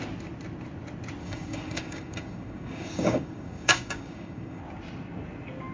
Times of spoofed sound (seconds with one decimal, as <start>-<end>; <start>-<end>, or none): 1.2-4.6

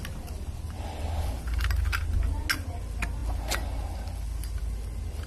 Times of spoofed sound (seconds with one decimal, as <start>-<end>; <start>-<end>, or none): none

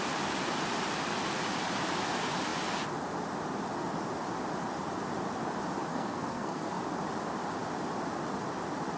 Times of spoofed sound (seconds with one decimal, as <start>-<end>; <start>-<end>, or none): 5.9-6.8

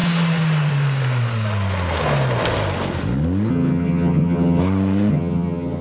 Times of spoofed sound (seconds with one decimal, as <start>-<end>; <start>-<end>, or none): 3.5-4.6; 5.1-5.8

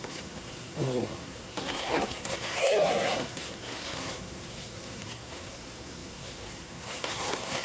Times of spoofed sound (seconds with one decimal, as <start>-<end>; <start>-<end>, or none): 0.0-7.6

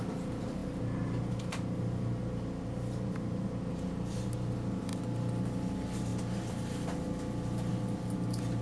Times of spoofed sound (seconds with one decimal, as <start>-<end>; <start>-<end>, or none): none